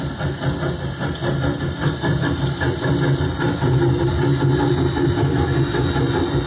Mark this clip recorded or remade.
recorded